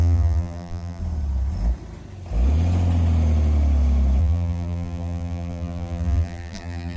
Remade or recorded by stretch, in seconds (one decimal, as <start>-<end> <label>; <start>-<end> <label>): 0.0-1.0 remade; 1.0-4.2 recorded; 4.2-7.0 remade